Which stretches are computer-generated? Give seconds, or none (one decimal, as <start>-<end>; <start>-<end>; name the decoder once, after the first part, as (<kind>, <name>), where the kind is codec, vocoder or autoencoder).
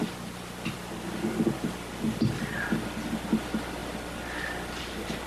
none